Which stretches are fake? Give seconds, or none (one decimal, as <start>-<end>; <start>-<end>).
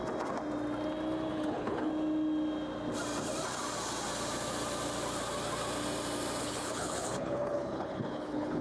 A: 1.3-1.9; 6.4-8.6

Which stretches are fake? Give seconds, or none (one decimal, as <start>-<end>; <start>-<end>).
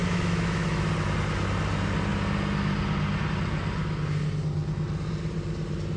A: 0.0-0.9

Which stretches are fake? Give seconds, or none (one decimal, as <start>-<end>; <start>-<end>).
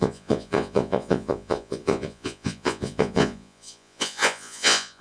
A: 0.0-5.0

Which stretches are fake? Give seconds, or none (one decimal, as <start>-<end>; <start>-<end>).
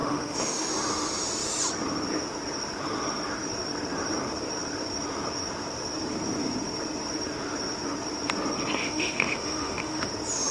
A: 0.0-0.7; 8.8-10.1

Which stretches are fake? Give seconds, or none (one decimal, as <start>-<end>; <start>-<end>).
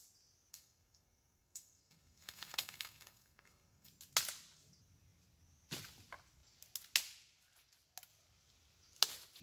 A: 0.5-3.9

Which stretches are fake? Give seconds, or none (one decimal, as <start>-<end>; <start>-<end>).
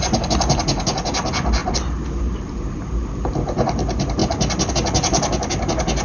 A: none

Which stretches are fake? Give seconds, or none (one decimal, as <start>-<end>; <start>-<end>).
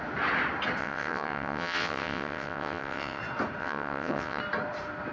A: 0.8-3.2; 3.6-4.4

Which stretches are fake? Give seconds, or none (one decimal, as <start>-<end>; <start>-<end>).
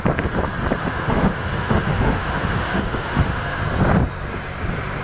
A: 0.8-3.6